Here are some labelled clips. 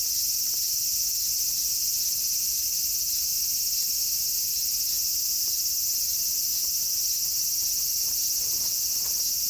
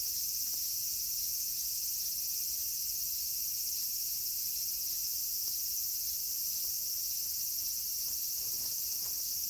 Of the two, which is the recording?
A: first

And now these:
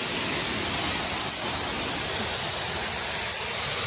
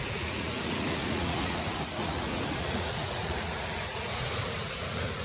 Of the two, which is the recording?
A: first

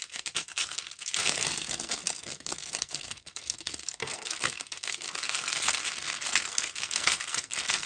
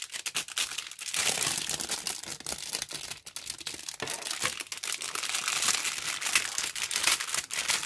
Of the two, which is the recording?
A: second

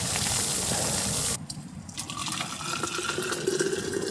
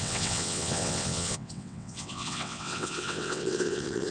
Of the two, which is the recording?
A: first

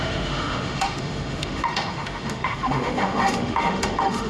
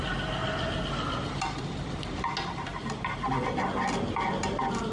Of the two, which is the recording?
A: second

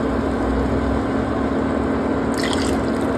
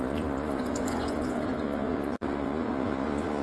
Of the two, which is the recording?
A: first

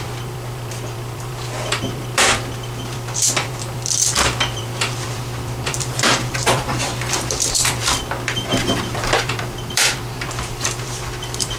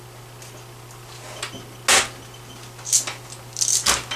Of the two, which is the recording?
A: second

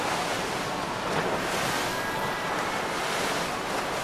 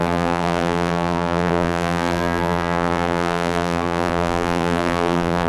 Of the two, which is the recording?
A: first